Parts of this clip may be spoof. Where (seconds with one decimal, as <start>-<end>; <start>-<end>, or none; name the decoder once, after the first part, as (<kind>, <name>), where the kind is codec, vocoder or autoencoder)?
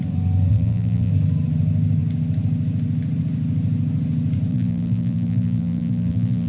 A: 0.5-1.1 (vocoder, BigVGAN v2); 4.5-6.5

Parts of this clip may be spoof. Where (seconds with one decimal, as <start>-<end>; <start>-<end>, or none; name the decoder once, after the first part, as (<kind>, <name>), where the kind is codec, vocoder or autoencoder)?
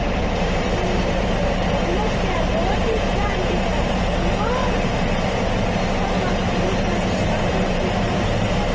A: 0.0-8.7 (vocoder, BigVGAN v2)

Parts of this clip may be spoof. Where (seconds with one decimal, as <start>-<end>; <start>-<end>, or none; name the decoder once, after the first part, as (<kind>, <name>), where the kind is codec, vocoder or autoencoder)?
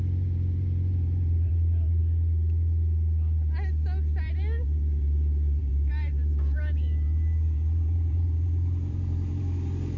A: 0.0-2.0 (vocoder, BigVGAN v2); 4.2-10.0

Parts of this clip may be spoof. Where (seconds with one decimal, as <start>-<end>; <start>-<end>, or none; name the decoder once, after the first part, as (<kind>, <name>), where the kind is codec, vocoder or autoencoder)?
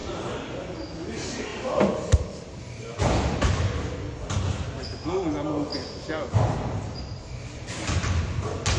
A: 0.0-0.6 (vocoder, BigVGAN v2); 1.5-4.5; 5.7-8.2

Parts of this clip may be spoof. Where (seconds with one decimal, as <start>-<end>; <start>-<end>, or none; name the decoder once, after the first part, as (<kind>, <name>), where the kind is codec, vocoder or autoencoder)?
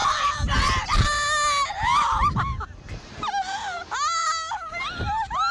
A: 0.0-0.8 (vocoder, BigVGAN v2); 4.2-4.7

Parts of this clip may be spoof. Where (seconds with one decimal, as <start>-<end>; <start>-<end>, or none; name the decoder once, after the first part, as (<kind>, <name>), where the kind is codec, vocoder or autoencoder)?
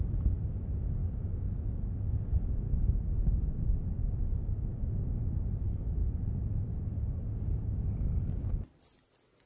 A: 6.0-7.8 (vocoder, BigVGAN v2)